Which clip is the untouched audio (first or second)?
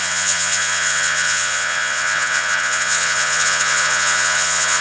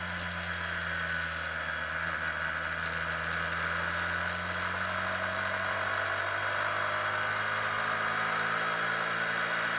second